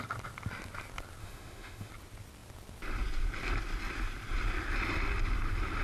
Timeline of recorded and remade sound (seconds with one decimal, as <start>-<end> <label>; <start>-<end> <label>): 0.0-1.2 recorded; 1.2-1.9 remade; 1.9-5.8 recorded